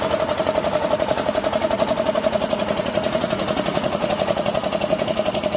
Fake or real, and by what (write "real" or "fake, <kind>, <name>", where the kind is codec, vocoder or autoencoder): fake, vocoder, Vocos